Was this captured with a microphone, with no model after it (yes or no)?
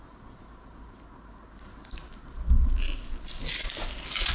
yes